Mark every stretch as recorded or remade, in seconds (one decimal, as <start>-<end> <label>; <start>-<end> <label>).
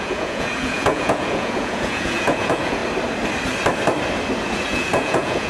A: 0.0-2.8 remade; 2.8-4.4 recorded; 4.4-5.5 remade